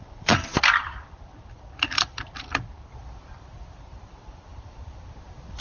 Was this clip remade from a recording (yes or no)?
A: yes